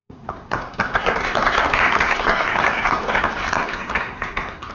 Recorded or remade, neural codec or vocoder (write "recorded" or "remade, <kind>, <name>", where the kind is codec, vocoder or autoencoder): remade, codec, SNAC